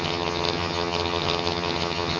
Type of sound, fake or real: fake